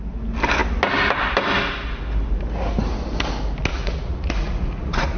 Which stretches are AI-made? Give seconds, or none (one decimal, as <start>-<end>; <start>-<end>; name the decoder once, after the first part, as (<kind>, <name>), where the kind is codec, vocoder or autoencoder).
3.7-5.2 (vocoder, Vocos)